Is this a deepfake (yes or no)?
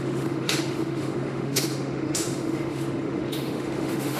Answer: yes